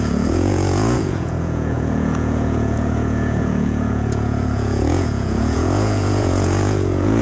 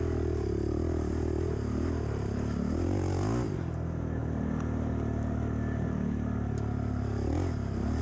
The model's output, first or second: first